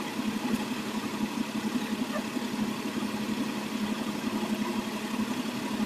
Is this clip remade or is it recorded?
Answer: recorded